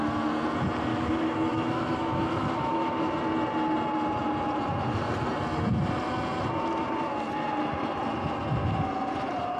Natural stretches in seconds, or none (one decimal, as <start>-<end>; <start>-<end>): 0.0-0.9; 3.1-9.6